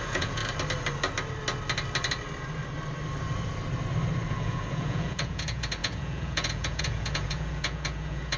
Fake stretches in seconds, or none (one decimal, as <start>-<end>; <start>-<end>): 0.0-0.4; 4.3-8.4

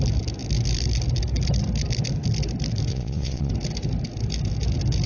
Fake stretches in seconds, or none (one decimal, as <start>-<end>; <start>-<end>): 2.9-3.5

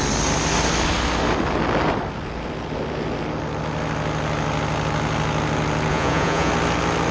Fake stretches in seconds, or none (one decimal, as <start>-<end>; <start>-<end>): 5.9-6.5